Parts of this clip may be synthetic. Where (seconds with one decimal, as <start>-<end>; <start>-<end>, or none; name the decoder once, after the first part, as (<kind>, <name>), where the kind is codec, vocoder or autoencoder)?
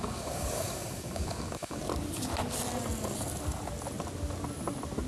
0.0-1.8 (codec, DAC)